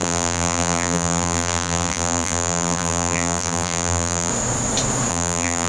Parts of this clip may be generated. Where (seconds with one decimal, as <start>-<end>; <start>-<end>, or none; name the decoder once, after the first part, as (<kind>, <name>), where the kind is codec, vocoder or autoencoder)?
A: 0.0-4.3 (vocoder, BigVGAN v2); 5.1-5.7